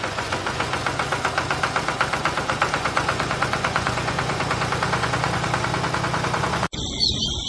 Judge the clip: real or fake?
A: fake